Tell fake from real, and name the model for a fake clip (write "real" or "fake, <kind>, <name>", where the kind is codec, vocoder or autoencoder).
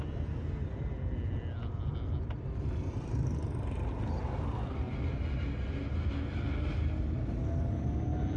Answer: real